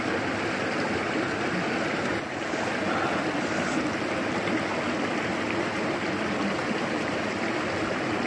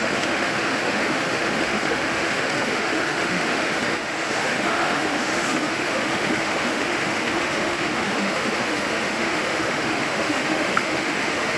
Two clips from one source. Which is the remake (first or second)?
second